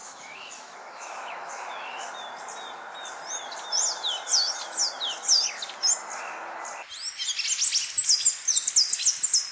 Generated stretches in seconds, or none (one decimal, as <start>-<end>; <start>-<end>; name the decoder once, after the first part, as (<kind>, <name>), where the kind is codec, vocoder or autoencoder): 0.0-2.1 (autoencoder, DAC-VAE)